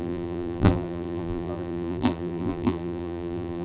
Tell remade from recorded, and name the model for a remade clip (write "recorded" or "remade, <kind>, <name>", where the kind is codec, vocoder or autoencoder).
remade, vocoder, BigVGAN v2